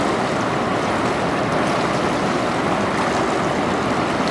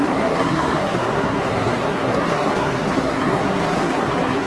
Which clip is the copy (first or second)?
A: second